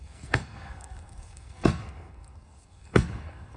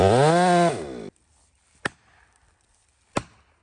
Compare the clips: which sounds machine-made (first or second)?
first